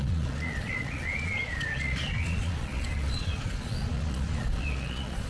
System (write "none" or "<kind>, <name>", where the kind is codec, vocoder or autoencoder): vocoder, Vocos